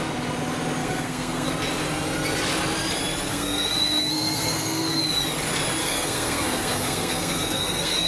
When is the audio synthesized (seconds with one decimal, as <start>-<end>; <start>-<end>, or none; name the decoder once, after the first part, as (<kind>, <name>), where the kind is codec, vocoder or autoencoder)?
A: 0.8-1.5 (codec, SNAC); 3.3-5.0; 5.8-8.1